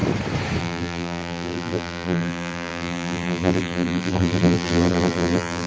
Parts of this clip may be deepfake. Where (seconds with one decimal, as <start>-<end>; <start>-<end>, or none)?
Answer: 0.6-5.7